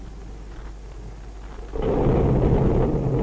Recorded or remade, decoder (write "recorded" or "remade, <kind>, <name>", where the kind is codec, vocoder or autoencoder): recorded